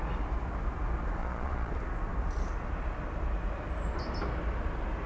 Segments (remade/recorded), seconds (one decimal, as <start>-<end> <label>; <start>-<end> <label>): 0.0-1.2 recorded; 1.2-1.7 remade; 1.7-5.1 recorded